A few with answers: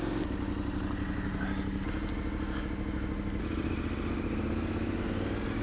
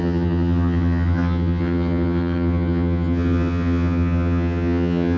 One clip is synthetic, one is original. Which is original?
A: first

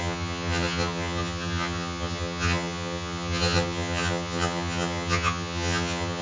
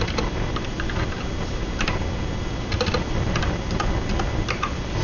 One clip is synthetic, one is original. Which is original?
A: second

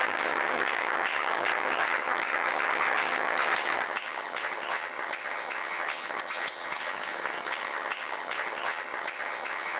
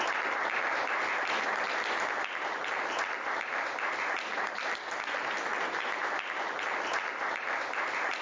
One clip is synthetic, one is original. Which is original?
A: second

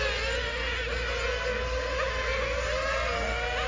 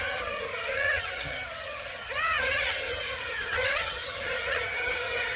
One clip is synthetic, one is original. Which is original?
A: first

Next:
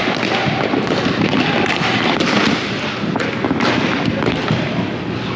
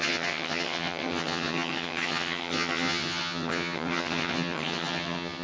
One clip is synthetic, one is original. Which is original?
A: first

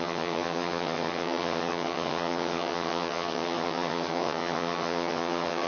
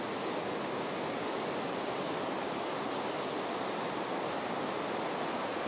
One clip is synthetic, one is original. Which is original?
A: second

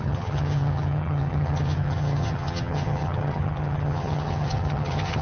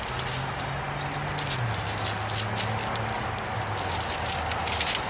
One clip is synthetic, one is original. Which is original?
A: second